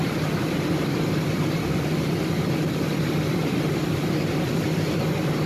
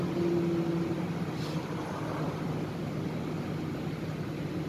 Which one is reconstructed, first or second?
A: first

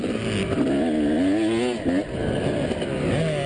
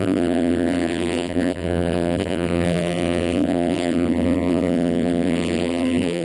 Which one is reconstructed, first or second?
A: second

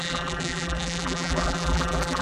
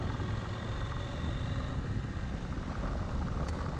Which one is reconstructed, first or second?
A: first